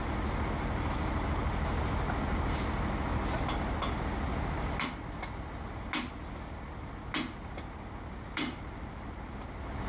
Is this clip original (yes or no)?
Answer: yes